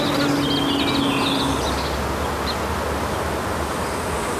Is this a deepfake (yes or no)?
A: no